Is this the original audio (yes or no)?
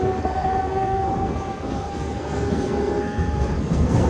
no